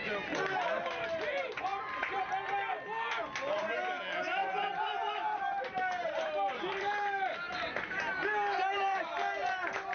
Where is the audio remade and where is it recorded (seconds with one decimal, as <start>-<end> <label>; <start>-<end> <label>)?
0.0-1.7 recorded; 1.7-2.2 remade; 2.2-4.4 recorded; 4.4-7.6 remade; 7.6-9.9 recorded